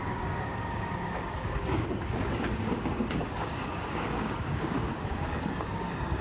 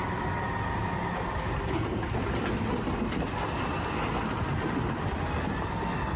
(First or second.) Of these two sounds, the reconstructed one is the first